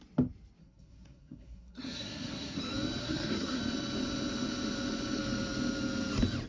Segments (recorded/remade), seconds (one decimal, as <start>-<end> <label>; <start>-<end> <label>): 0.0-0.6 recorded; 0.6-2.6 remade; 2.6-3.0 recorded; 3.0-3.6 remade; 3.6-6.5 recorded